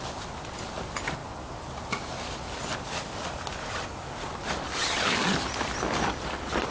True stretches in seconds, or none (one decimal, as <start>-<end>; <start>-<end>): 1.2-4.0